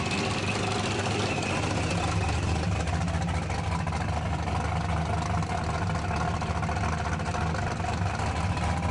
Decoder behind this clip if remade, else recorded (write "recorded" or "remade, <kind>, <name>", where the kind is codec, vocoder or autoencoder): recorded